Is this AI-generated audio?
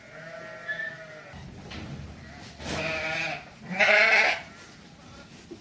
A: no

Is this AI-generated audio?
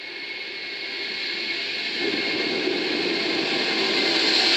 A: no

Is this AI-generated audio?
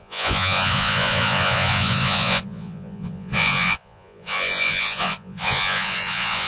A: yes